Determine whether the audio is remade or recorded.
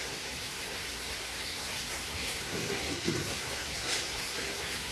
remade